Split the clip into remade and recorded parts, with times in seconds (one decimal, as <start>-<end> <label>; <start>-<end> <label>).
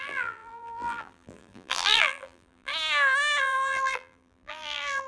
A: 0.0-2.7 remade; 2.7-3.4 recorded; 3.4-5.1 remade